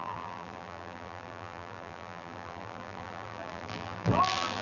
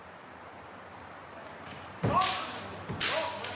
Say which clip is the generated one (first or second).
first